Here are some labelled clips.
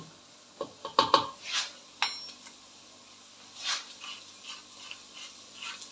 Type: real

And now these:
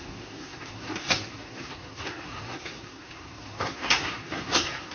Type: fake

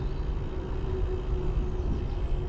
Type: real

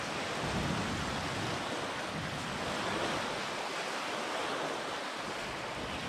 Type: real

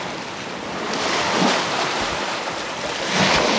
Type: real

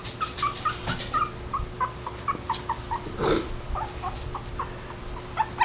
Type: real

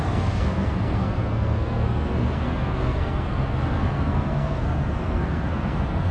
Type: fake